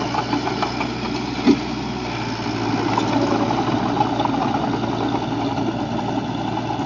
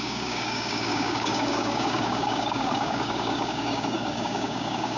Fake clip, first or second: second